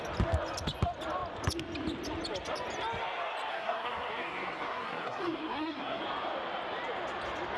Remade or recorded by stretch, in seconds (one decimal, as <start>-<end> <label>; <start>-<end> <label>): 0.0-3.5 recorded; 3.5-6.0 remade; 6.0-7.6 recorded